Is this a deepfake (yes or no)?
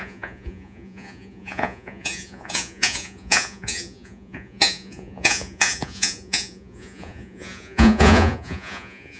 yes